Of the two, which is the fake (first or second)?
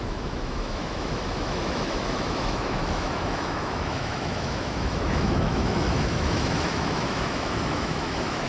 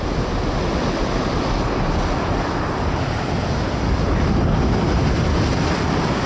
first